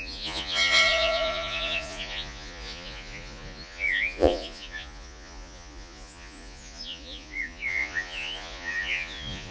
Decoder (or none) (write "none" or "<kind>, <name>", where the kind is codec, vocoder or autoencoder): vocoder, Vocos